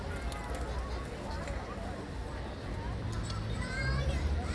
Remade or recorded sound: recorded